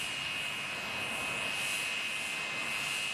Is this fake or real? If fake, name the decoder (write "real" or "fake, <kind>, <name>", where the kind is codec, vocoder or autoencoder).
real